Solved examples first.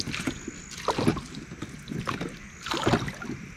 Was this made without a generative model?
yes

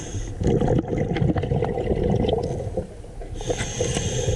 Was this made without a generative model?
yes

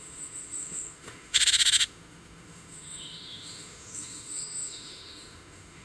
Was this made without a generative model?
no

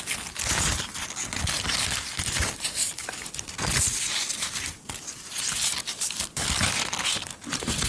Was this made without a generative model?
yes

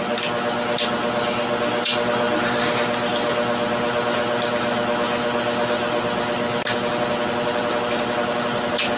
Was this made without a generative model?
yes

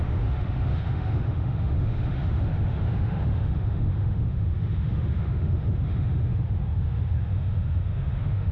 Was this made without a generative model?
no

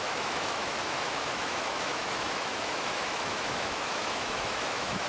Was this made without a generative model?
no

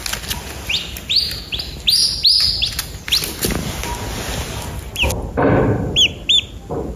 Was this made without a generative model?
yes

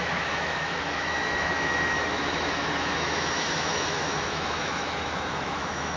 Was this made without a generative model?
no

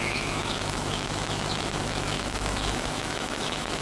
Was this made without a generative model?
no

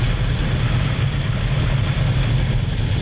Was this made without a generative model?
yes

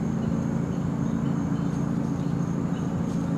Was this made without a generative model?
yes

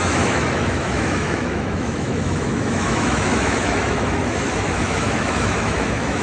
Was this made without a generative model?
no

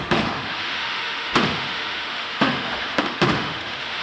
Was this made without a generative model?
no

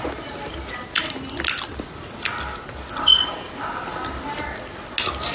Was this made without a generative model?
yes